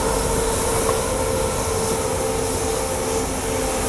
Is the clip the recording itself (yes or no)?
yes